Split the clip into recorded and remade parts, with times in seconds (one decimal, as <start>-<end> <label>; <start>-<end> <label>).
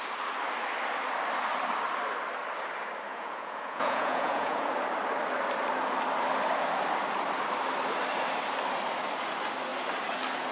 0.0-3.1 recorded; 3.1-4.7 remade; 4.7-10.5 recorded